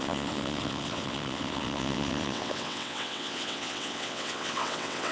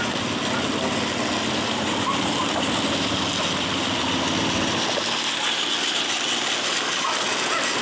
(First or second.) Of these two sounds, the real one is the second